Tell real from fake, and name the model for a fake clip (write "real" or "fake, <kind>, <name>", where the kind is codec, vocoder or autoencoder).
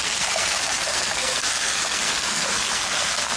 fake, codec, SNAC